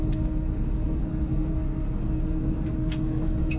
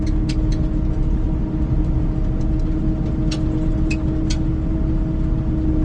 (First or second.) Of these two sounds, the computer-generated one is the first